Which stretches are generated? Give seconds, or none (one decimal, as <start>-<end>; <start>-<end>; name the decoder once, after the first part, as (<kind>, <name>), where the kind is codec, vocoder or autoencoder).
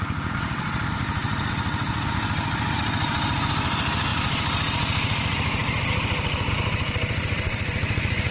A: none